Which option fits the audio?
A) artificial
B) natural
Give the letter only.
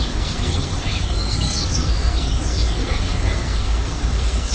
A